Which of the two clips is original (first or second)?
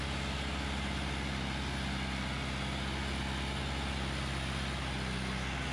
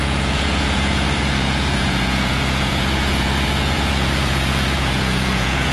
first